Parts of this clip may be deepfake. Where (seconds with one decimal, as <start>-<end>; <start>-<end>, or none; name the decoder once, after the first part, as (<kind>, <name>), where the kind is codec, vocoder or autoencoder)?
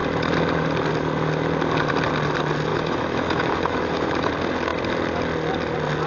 2.7-4.3 (autoencoder, DAC-VAE)